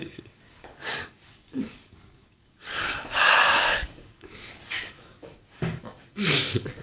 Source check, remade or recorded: remade